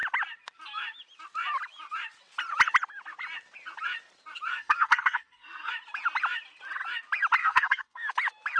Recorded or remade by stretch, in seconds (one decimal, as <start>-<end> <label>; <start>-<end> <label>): 0.0-4.5 recorded; 4.5-5.7 remade; 5.7-7.4 recorded; 7.4-8.1 remade; 8.1-8.6 recorded